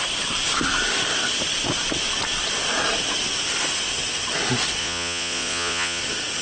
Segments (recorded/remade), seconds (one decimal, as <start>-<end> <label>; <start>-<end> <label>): 0.0-4.8 recorded; 4.8-6.0 remade; 6.0-6.4 recorded